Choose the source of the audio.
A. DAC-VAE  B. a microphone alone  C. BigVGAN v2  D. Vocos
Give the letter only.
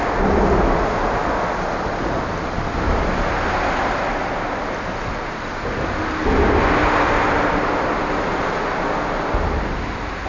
B